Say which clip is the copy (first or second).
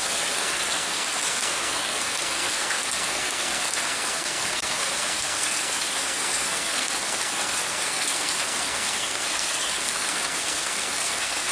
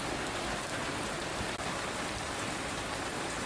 first